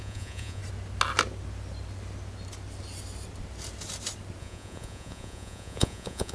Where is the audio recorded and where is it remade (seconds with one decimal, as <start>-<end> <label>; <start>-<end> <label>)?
0.0-0.6 remade; 0.6-4.4 recorded; 4.4-6.3 remade